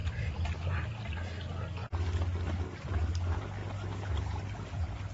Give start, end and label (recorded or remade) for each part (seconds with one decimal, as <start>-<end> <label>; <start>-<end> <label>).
0.0-5.1 recorded